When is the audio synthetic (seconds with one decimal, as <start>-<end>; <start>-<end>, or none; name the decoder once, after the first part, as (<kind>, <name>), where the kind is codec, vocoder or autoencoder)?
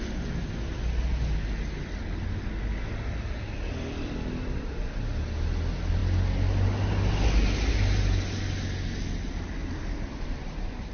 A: none